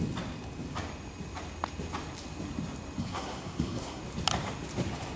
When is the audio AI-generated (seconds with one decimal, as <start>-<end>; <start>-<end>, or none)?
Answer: 3.0-4.0